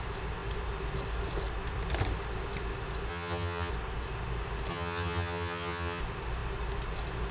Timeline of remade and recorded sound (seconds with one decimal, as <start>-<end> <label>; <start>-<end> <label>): 0.0-3.1 recorded; 3.1-3.7 remade; 3.7-4.7 recorded; 4.7-6.0 remade; 6.0-7.3 recorded